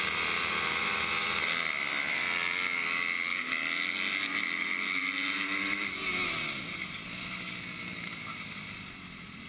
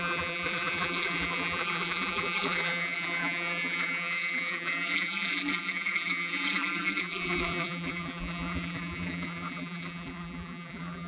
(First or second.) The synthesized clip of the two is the second